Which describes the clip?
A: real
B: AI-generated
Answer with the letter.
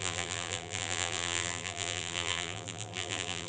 B